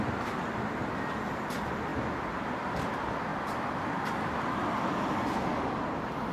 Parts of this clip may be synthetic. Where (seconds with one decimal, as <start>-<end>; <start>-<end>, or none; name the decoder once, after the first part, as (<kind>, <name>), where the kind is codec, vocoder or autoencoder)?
none